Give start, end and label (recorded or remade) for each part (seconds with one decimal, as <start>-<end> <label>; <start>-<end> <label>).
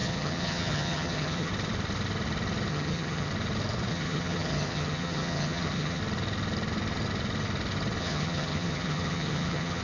0.0-1.5 remade; 1.5-2.7 recorded; 2.7-3.3 remade; 3.3-3.9 recorded; 3.9-6.0 remade; 6.0-8.0 recorded; 8.0-9.8 remade